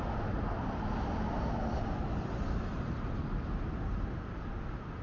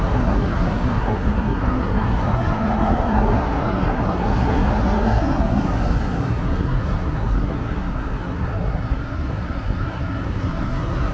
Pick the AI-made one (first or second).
second